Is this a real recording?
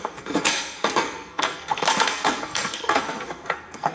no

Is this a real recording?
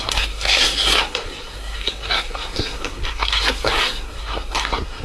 no